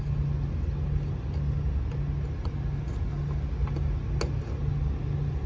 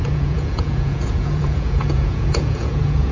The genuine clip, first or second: first